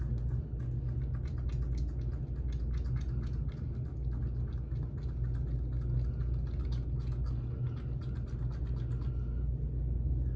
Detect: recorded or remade recorded